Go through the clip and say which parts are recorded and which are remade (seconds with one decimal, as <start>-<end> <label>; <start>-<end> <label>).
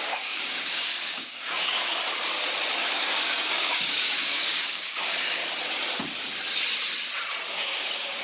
0.0-1.9 remade; 1.9-2.8 recorded; 2.8-5.4 remade; 5.4-7.5 recorded; 7.5-8.2 remade